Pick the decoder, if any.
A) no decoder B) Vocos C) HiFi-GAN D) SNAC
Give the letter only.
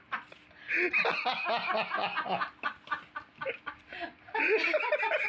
A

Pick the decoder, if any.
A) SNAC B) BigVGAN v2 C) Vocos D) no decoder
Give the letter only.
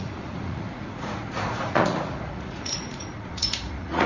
C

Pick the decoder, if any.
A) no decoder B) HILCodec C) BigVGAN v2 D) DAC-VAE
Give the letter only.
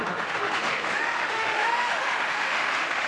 D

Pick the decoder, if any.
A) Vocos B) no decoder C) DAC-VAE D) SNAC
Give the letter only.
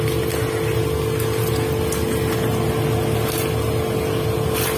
B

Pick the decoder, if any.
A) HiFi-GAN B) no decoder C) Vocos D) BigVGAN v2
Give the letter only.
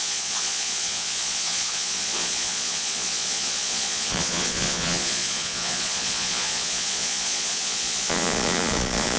C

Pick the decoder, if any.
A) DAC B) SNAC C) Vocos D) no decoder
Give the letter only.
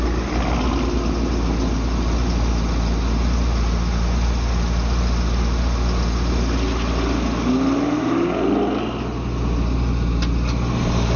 D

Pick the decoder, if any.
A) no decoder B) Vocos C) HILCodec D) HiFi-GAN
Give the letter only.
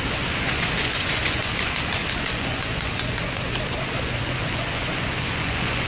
B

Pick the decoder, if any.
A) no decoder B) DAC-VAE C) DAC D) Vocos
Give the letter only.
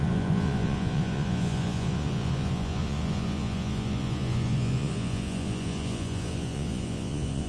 D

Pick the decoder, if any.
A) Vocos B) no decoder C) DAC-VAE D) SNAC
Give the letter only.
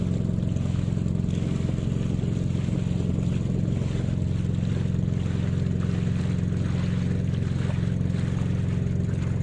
B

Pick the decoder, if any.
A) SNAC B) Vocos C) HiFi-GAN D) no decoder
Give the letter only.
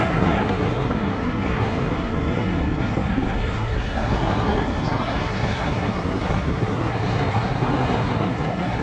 A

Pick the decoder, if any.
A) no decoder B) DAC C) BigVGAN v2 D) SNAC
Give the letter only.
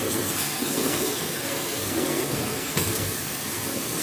D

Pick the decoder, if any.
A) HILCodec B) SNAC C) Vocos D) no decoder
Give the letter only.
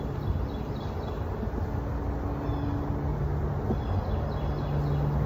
D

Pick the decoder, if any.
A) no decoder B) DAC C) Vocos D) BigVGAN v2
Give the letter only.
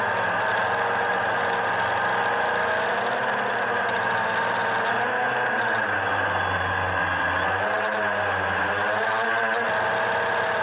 A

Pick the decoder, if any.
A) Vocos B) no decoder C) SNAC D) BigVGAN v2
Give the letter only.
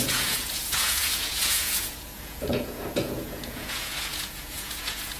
A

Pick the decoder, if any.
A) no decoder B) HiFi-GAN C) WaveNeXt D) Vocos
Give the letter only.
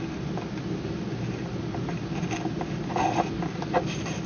A